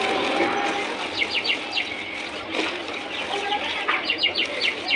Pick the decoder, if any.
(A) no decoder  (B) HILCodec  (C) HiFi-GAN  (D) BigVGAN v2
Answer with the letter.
A